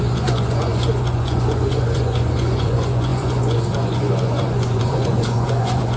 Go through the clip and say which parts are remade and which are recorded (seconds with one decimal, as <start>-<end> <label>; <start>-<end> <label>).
0.0-6.0 remade